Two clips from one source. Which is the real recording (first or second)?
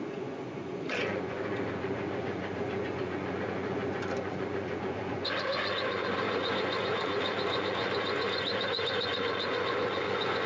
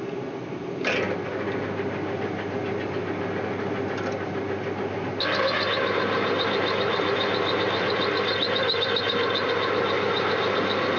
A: second